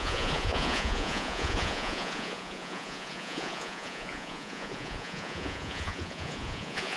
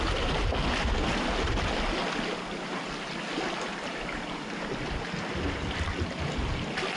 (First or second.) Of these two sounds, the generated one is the first